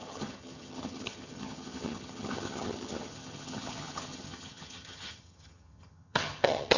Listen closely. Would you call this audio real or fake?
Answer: fake